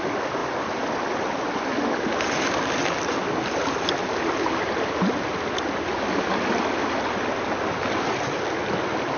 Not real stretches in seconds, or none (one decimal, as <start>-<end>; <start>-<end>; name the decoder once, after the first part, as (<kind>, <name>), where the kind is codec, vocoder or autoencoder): none